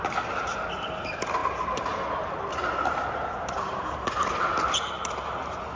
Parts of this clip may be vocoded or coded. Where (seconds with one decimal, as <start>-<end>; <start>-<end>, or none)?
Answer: none